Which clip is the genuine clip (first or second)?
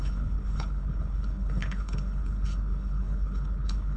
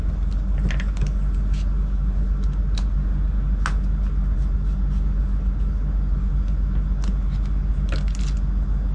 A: second